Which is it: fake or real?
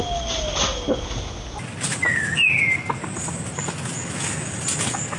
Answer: real